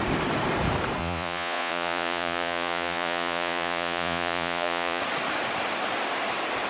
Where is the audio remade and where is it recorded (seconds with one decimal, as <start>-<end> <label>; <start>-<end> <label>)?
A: 0.0-1.0 recorded; 1.0-5.0 remade; 5.0-6.7 recorded

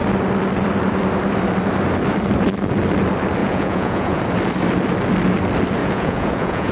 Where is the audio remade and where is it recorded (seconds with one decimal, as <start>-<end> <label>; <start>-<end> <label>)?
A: 0.0-3.4 recorded; 3.4-4.2 remade; 4.2-5.8 recorded; 5.8-6.7 remade

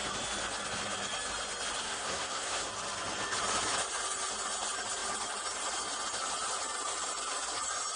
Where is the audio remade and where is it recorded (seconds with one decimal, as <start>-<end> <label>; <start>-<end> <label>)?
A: 0.0-1.8 recorded; 1.8-2.7 remade; 2.7-8.0 recorded

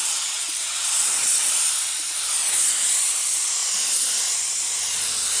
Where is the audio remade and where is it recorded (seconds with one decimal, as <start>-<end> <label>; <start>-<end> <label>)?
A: 0.0-1.5 remade; 1.5-5.4 recorded

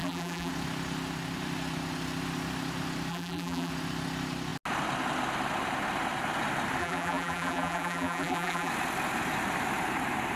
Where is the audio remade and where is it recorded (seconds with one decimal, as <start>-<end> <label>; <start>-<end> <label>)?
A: 0.0-0.5 remade; 0.5-3.1 recorded; 3.1-3.7 remade; 3.7-6.8 recorded; 6.8-8.7 remade; 8.7-10.4 recorded

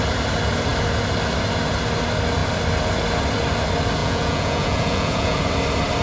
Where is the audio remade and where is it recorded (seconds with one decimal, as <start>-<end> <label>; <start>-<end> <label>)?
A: 0.0-4.0 recorded; 4.0-5.4 remade; 5.4-6.0 recorded

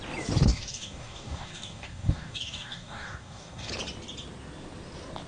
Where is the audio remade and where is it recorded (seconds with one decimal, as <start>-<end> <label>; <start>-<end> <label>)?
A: 0.0-0.5 recorded; 0.5-3.7 remade; 3.7-5.3 recorded

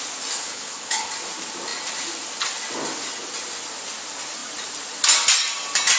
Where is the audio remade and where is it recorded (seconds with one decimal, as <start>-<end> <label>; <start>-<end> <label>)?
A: 0.0-0.4 recorded; 0.4-1.1 remade; 1.1-6.0 recorded